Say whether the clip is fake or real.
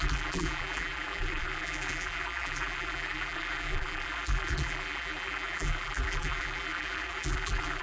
fake